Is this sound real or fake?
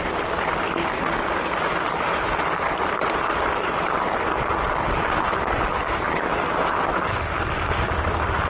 real